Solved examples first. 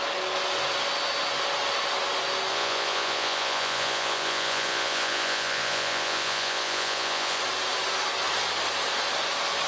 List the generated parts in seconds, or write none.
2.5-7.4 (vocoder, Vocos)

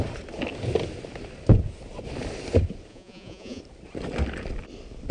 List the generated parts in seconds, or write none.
2.9-3.6 (vocoder, Vocos)

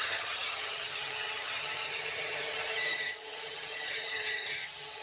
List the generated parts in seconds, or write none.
0.0-5.0 (vocoder, HiFi-GAN)